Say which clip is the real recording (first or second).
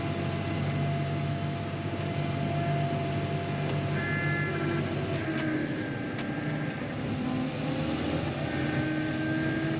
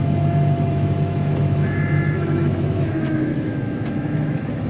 first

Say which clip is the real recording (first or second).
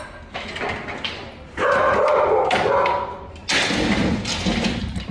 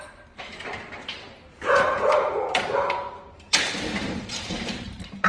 first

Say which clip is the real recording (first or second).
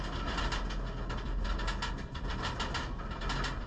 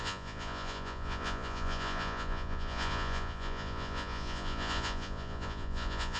first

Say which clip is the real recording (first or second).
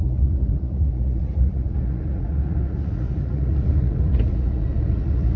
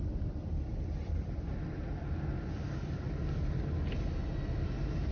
second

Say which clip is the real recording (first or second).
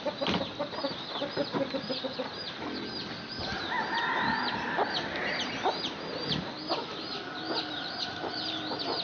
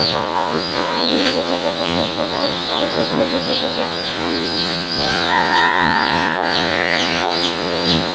first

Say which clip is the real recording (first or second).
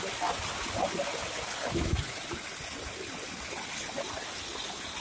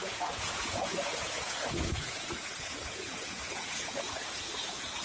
first